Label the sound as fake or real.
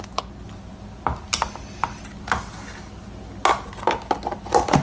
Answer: real